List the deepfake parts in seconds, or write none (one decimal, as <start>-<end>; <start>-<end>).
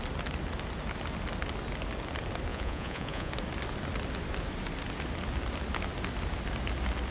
2.5-3.3